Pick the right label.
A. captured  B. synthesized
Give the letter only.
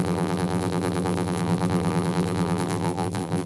B